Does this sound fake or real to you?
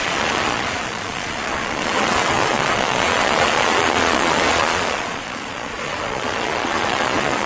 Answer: fake